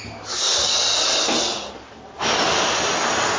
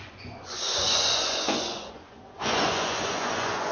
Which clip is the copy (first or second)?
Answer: second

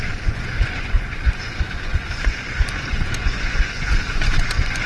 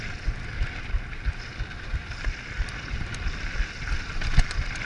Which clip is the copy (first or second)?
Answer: first